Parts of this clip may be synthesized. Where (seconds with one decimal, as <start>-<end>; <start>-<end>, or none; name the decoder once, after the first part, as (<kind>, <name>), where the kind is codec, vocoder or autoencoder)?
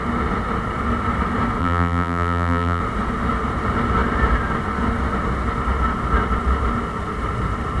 1.6-2.8 (vocoder, BigVGAN v2)